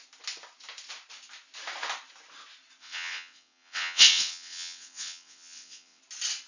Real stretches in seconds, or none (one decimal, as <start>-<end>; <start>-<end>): 0.0-2.8; 6.0-6.5